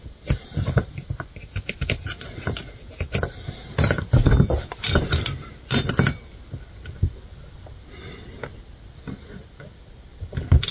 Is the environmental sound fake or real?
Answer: real